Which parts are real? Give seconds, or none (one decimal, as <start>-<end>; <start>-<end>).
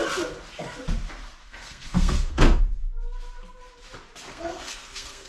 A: 0.0-1.4; 2.6-4.3